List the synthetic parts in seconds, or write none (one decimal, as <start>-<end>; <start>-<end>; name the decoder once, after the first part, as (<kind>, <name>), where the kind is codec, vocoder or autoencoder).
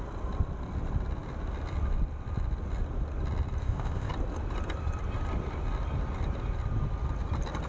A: 3.6-4.1 (codec, ZipCodec)